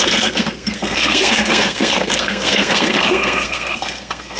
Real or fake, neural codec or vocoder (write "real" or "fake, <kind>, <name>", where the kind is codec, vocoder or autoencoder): fake, codec, SNAC